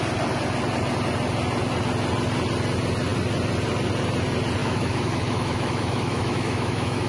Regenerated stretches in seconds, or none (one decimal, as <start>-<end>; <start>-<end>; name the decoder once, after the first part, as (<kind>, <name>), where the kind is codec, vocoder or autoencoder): 4.6-7.1 (autoencoder, DAC-VAE)

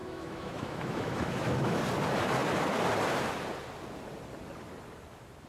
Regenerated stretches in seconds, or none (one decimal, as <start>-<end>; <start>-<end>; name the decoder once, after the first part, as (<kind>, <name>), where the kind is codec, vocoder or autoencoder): 0.0-1.8 (autoencoder, DAC-VAE)

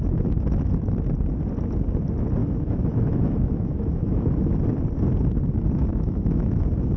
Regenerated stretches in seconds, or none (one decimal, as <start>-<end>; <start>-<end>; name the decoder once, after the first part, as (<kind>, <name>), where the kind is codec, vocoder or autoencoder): 2.4-4.6 (autoencoder, DAC-VAE); 5.9-6.6